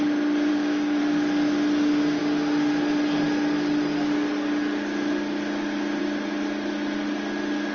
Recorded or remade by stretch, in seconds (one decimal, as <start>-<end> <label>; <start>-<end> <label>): 0.0-0.5 recorded; 0.5-1.0 remade; 1.0-7.7 recorded